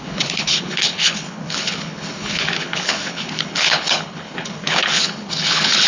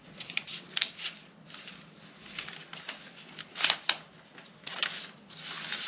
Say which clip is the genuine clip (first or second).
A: second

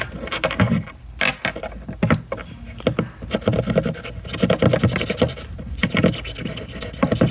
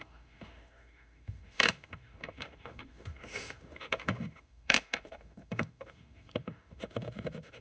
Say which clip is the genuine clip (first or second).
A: first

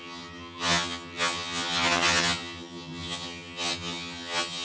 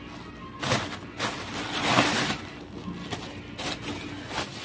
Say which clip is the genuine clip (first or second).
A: second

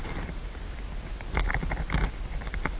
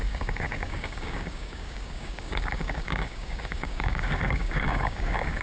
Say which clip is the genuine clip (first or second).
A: first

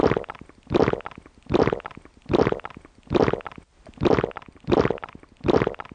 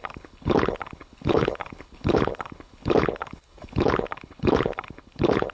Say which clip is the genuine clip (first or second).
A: first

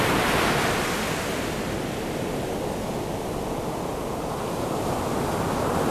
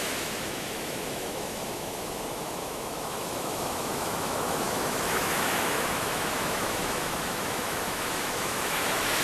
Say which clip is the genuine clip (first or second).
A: first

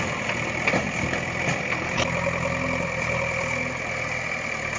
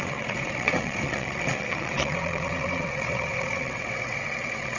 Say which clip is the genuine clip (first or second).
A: first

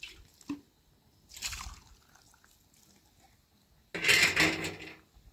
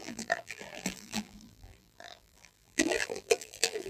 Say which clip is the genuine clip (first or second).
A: first